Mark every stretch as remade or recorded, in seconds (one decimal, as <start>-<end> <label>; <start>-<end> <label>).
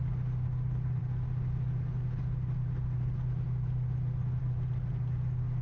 0.0-5.6 recorded